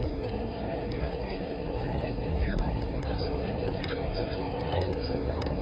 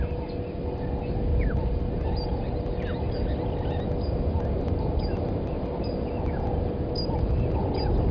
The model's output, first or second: first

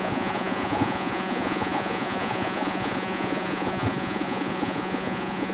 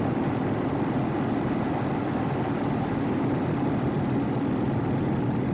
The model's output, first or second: first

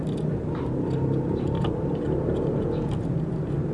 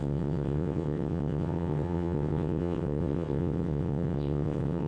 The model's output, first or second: second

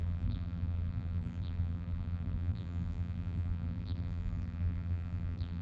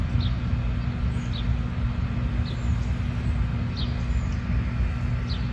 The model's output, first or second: first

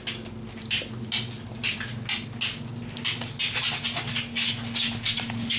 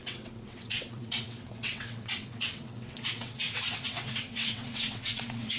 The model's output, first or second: second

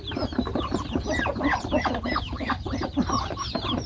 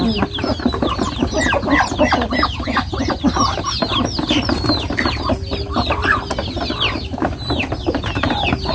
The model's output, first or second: first